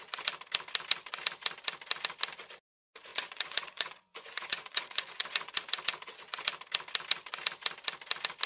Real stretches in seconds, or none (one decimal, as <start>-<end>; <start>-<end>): 0.0-3.1; 5.6-8.5